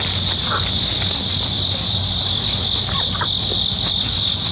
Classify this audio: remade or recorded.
recorded